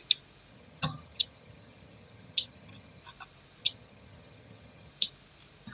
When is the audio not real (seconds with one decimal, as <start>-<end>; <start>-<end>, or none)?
0.5-3.0; 3.6-4.9